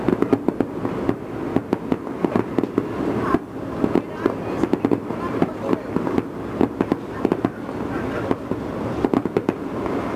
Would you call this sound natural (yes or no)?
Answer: yes